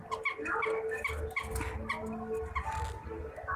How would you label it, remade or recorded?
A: recorded